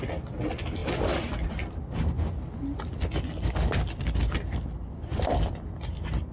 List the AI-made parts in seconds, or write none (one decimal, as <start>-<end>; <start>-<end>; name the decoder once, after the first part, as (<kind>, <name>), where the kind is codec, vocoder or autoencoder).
none